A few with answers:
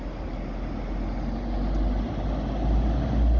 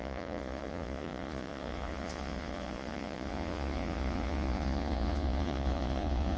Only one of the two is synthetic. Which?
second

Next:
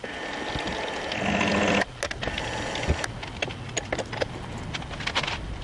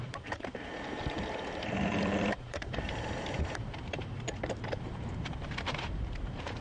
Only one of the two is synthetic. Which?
second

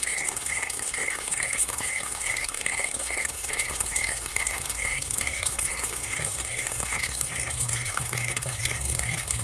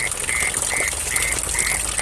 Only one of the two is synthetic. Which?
first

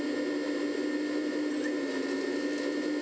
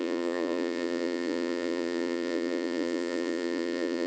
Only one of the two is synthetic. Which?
second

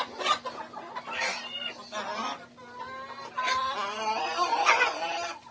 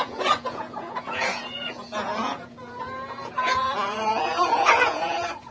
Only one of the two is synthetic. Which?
second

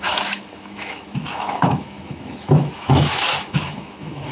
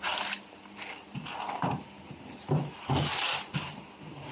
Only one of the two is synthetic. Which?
first